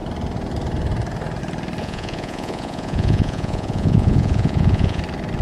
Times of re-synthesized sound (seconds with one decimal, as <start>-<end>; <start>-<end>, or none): 1.8-5.0